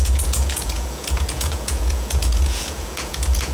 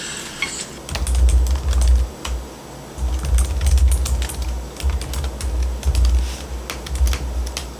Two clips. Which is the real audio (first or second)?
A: second